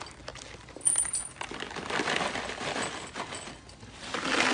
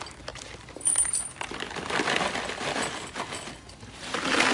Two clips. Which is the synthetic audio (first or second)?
second